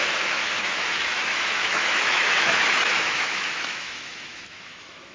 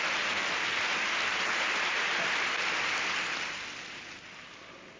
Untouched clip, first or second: second